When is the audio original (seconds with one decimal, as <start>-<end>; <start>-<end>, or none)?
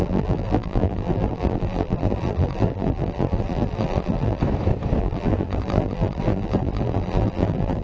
4.4-5.0